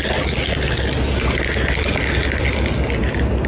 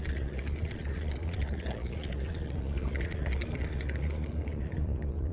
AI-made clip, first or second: second